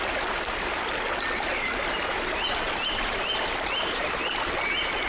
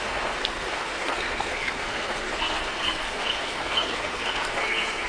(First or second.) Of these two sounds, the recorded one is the first